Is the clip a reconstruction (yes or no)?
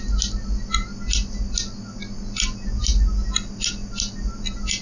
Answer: no